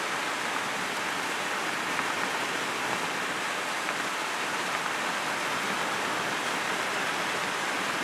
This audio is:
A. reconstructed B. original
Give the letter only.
B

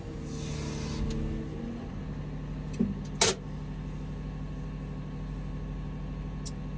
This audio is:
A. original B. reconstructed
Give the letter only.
A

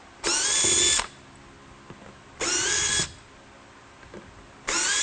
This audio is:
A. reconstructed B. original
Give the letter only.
B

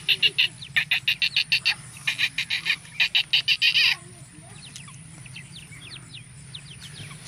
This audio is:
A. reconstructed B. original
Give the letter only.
B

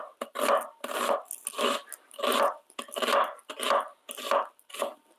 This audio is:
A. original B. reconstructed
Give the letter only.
A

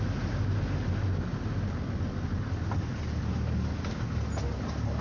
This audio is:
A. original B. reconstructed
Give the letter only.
A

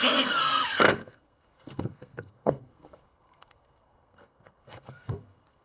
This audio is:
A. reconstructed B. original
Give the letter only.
A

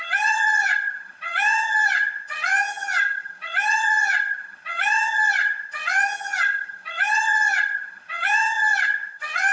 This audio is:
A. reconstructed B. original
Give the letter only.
A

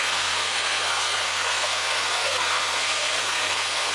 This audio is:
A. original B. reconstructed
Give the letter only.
B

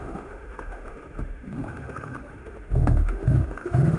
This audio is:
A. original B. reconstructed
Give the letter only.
B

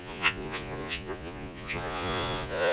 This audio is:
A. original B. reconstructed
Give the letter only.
B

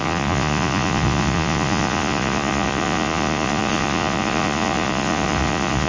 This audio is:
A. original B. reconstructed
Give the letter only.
B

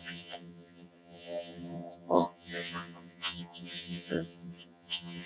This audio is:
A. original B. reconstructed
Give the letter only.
B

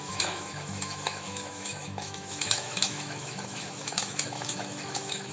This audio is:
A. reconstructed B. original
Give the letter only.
A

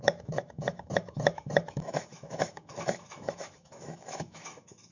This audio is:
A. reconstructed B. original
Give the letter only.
A